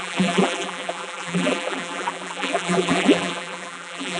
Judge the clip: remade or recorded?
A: remade